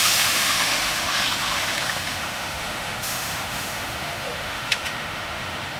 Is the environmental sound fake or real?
fake